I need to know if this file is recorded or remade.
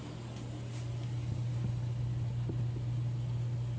recorded